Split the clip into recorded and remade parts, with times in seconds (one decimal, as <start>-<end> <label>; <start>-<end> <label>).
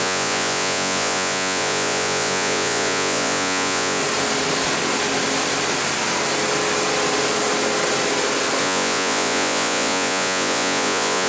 0.0-4.0 remade; 4.0-8.6 recorded; 8.6-11.3 remade